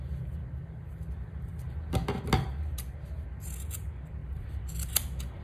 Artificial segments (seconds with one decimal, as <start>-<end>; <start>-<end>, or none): 4.2-5.4

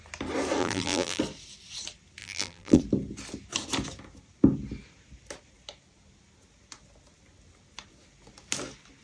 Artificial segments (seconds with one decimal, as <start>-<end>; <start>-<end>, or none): 0.6-1.2; 2.2-2.8

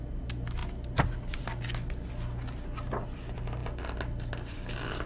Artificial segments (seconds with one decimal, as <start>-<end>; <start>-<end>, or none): none

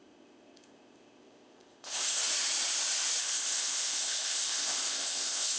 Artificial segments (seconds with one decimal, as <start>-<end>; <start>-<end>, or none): 0.0-2.2; 3.2-5.6

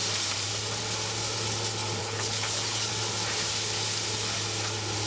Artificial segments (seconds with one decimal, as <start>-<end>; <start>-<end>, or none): 2.0-2.9

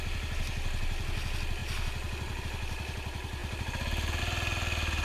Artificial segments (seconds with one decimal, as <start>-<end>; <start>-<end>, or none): none

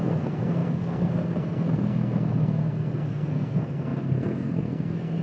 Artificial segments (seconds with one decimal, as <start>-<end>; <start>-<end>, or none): 0.0-5.2